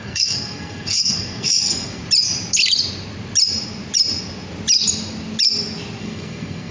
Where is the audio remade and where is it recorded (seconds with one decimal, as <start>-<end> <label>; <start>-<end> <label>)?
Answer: 0.0-2.0 remade; 2.0-6.0 recorded; 6.0-6.7 remade